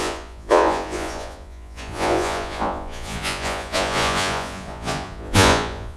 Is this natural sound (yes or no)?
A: no